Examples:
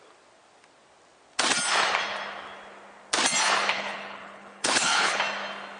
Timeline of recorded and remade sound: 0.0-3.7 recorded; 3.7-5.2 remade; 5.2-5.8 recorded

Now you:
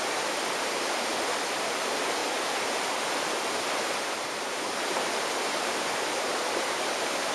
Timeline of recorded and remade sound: 0.0-1.1 remade; 1.1-1.8 recorded; 1.8-2.2 remade; 2.2-4.0 recorded; 4.0-7.3 remade

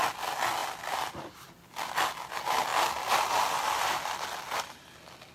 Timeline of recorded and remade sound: 0.0-5.3 recorded

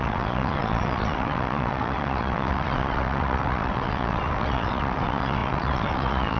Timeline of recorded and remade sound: 0.0-6.4 remade

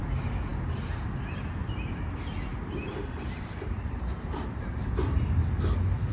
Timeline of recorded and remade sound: 0.0-2.8 recorded; 2.8-4.1 remade; 4.1-6.1 recorded

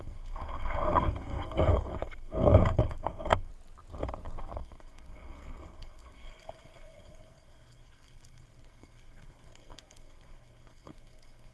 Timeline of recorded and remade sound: 0.0-3.5 remade; 3.5-4.4 recorded; 4.4-11.5 remade